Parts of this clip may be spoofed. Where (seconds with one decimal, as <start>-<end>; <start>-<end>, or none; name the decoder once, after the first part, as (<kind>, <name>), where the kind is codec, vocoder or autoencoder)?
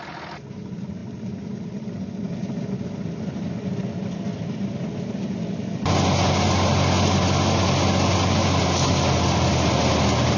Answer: none